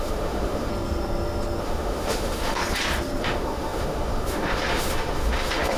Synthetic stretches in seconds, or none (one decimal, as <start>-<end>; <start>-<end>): 0.0-0.7; 1.6-2.6; 3.2-5.8